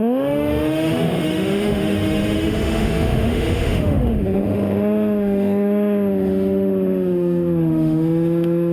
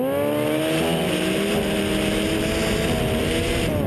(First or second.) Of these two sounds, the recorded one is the second